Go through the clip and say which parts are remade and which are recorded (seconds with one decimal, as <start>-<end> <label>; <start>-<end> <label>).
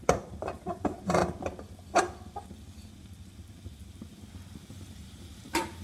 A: 0.0-1.2 remade; 1.2-4.7 recorded; 4.7-5.8 remade